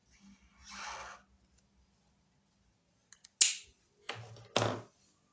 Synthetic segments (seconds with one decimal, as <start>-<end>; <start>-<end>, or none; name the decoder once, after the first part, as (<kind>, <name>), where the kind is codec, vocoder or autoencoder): none